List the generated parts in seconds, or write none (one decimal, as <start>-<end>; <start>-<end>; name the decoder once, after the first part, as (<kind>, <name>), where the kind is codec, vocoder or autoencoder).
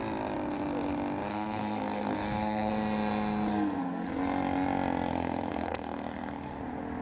1.3-2.7 (codec, SNAC); 3.5-4.1; 5.1-6.6